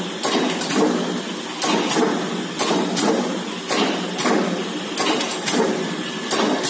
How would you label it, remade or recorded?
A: recorded